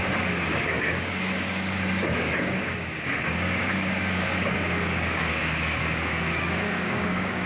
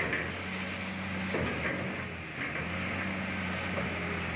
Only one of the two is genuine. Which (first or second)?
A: second